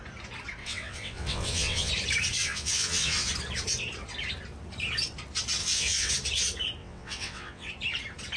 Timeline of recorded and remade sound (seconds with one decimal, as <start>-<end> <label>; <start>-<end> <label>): 0.0-0.6 recorded; 0.6-1.9 remade; 1.9-2.4 recorded; 2.4-3.3 remade; 3.3-5.6 recorded; 5.6-6.1 remade; 6.1-6.8 recorded; 6.8-7.7 remade; 7.7-8.4 recorded